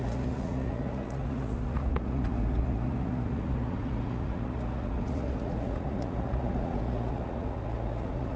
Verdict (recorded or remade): remade